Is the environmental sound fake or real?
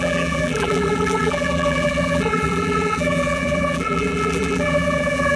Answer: fake